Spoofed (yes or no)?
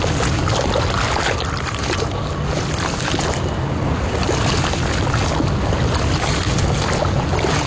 no